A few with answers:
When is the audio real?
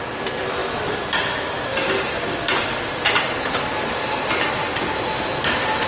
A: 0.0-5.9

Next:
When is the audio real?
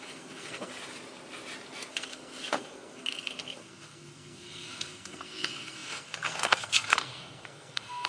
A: 0.7-1.9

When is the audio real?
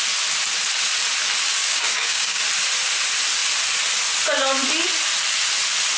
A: 0.0-1.6; 2.4-6.0